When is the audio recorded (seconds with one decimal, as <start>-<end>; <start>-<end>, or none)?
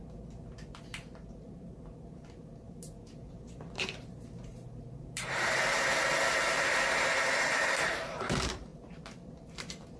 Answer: 5.9-6.9